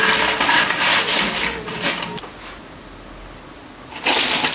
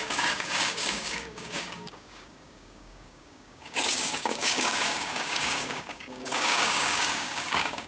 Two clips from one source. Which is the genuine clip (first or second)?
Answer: first